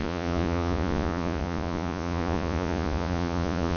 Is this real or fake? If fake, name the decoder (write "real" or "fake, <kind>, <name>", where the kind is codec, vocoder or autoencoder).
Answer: fake, vocoder, Vocos